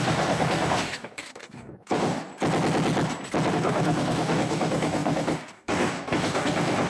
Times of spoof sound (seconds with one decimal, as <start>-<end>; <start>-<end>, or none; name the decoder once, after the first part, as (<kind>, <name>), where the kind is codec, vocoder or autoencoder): 0.0-2.3 (codec, DAC); 3.5-6.9